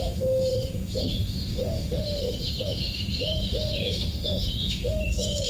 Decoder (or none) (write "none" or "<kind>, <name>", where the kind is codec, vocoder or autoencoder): autoencoder, DAC-VAE